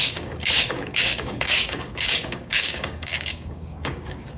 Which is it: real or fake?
fake